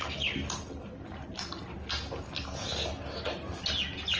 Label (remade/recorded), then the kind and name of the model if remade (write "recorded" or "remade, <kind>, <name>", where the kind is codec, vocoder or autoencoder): recorded